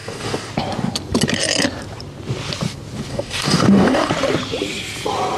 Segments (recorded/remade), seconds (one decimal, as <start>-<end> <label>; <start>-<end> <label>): 0.0-0.5 remade; 0.5-3.1 recorded; 3.1-4.1 remade; 4.1-5.4 recorded